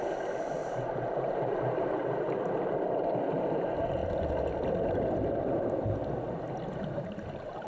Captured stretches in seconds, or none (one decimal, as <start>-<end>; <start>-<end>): 0.0-0.6; 3.5-7.7